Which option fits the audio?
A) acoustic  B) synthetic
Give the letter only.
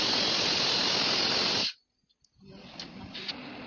A